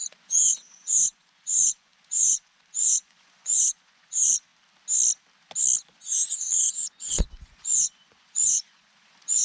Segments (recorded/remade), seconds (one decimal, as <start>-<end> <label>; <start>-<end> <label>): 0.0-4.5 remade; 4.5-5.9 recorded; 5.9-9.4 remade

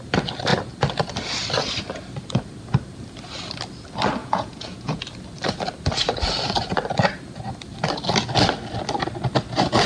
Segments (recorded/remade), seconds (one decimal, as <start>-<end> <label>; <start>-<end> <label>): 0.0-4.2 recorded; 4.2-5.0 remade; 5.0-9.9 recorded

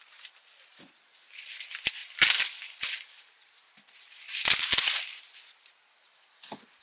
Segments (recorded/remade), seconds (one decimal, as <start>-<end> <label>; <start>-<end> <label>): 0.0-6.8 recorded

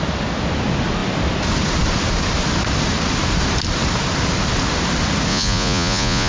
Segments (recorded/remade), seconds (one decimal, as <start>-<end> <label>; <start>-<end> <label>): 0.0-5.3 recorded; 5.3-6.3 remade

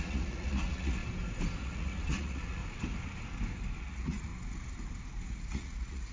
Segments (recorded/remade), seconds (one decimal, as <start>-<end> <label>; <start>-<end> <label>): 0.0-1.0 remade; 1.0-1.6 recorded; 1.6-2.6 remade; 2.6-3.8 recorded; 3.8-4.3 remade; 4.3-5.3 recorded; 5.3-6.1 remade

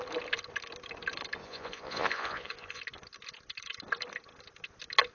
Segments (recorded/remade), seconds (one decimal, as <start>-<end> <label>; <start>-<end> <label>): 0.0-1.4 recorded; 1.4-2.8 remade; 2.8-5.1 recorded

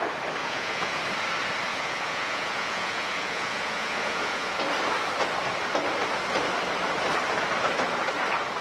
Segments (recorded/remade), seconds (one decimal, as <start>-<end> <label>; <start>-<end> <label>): 0.0-0.4 recorded; 0.4-1.0 remade; 1.0-1.7 recorded; 1.7-4.6 remade; 4.6-8.6 recorded